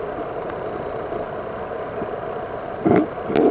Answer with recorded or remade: recorded